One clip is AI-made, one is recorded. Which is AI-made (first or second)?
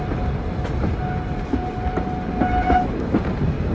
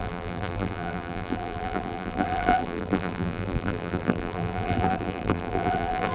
second